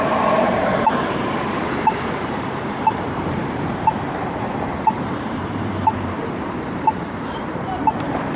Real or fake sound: fake